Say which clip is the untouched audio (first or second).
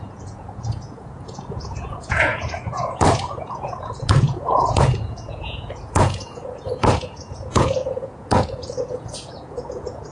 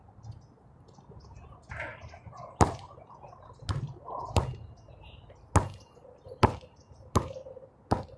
second